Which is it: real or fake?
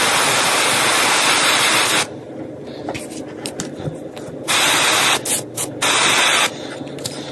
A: real